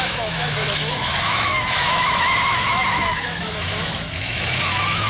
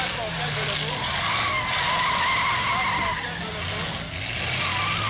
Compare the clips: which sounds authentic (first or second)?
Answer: second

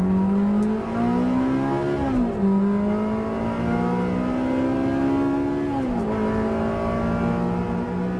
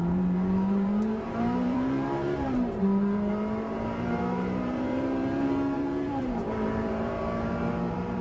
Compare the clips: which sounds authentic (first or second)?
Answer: first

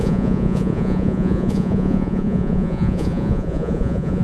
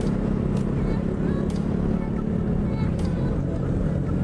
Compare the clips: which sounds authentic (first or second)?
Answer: second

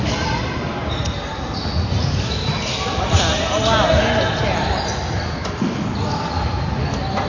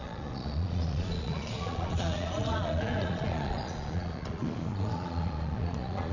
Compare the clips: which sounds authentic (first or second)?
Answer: first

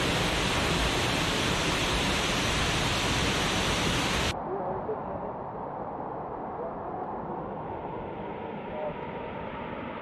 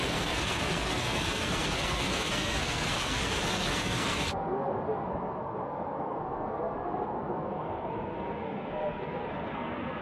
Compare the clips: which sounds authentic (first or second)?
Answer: first